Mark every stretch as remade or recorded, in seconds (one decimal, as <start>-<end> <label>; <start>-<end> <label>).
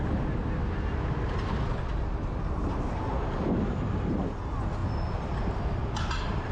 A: 0.0-6.5 recorded